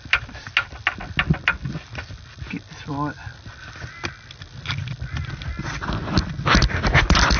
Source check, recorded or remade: recorded